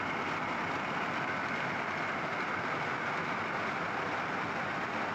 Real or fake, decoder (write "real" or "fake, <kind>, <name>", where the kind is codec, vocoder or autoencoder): real